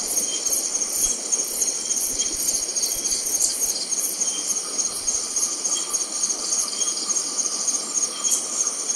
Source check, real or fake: fake